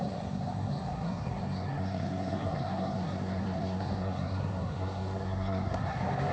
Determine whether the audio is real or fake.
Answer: fake